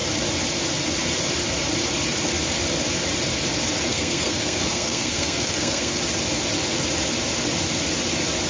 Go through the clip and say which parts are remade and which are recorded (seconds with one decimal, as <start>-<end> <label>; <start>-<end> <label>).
0.0-3.9 recorded; 3.9-6.0 remade; 6.0-8.5 recorded